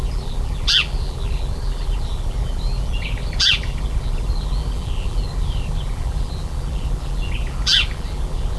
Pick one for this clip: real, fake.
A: fake